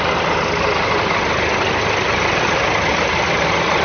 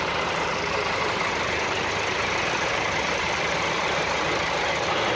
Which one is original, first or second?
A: first